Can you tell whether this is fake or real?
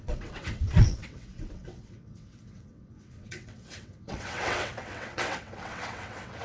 fake